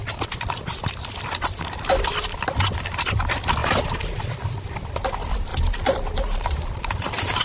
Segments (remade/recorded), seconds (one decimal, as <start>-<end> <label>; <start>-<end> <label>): 0.0-3.6 recorded; 3.6-4.2 remade; 4.2-5.5 recorded; 5.5-7.4 remade